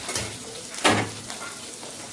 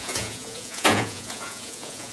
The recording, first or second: first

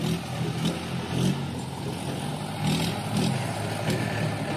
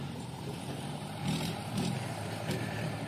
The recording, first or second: first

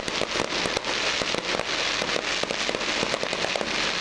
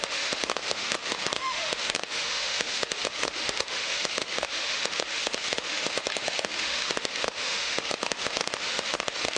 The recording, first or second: first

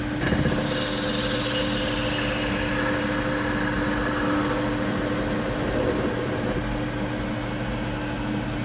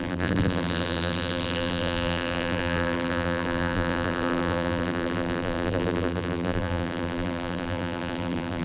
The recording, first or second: first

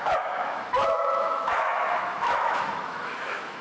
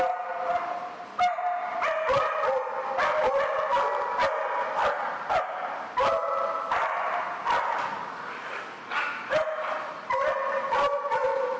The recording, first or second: second